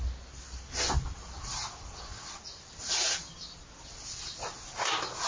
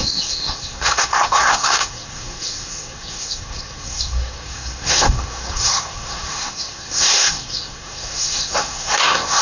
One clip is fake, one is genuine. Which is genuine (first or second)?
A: first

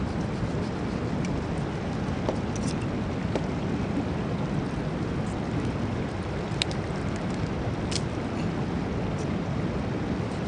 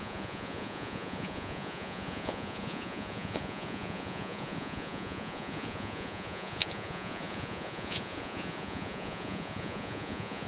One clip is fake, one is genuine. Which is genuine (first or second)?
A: first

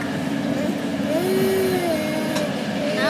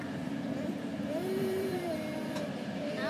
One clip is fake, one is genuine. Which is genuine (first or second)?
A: first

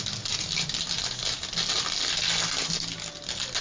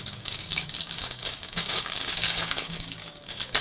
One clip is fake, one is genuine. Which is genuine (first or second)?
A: first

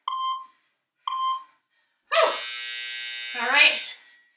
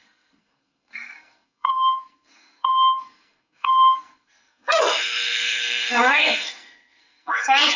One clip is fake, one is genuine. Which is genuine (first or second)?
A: first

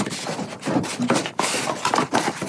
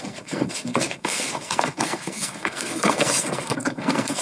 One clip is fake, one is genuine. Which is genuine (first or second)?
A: first